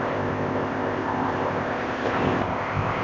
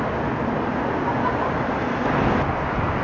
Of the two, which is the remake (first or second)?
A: first